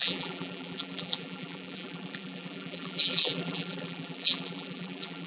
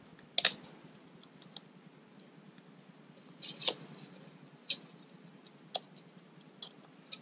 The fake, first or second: first